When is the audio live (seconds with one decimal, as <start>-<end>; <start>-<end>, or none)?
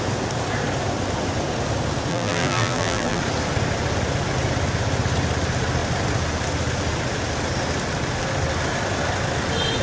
0.0-2.1; 3.2-9.8